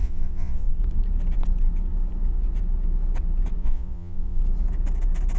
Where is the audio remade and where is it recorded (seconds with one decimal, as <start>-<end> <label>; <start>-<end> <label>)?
0.0-0.8 remade; 0.8-3.6 recorded; 3.6-4.4 remade; 4.4-5.4 recorded